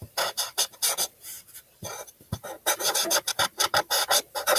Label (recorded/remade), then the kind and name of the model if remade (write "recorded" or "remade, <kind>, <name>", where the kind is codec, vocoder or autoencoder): remade, vocoder, BigVGAN v2